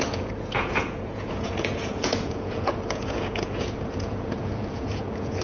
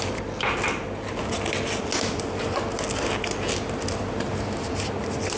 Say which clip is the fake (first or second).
first